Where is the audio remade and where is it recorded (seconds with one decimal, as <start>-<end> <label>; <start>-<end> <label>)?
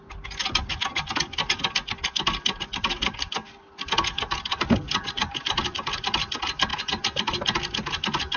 0.0-8.4 recorded